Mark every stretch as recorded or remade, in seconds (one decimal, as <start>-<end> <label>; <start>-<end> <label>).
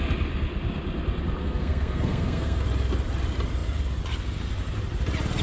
0.0-1.4 recorded; 1.4-2.6 remade; 2.6-5.4 recorded